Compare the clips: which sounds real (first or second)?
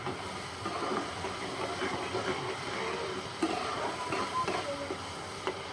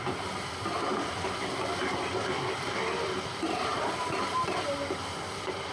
first